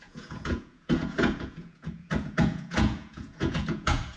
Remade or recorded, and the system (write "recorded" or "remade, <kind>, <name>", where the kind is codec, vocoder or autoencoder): remade, vocoder, Vocos